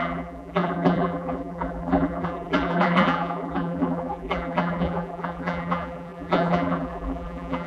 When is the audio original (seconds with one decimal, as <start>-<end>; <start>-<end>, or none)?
none